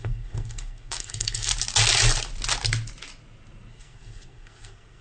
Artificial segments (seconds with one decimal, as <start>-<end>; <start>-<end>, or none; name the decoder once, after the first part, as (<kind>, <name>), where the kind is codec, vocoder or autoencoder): 0.0-1.5 (codec, SNAC); 3.7-5.0